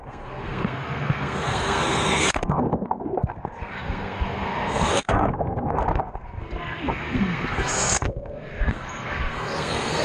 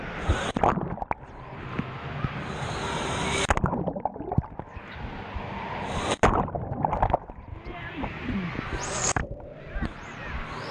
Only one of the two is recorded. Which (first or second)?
second